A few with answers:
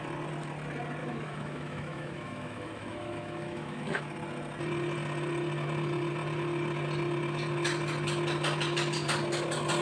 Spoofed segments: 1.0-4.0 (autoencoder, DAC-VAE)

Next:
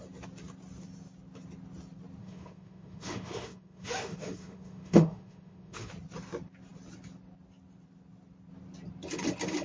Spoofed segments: 2.2-5.9 (autoencoder, DAC-VAE)

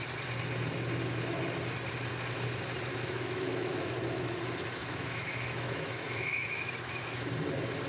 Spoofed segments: 2.9-4.3 (autoencoder, DAC-VAE); 4.8-7.3

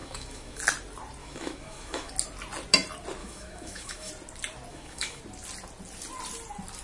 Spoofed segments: 0.0-0.6 (autoencoder, DAC-VAE); 1.2-2.1; 3.2-4.1; 4.7-5.2

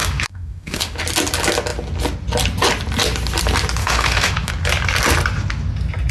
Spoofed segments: 0.0-1.0 (autoencoder, DAC-VAE); 3.8-4.5